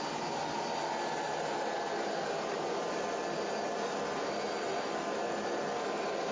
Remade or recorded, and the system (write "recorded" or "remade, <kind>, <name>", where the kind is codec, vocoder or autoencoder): recorded